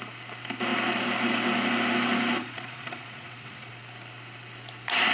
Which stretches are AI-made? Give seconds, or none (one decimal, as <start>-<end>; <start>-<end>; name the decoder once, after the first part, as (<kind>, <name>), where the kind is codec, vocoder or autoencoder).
2.4-3.7 (vocoder, Vocos)